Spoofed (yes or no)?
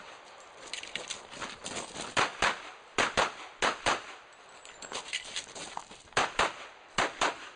no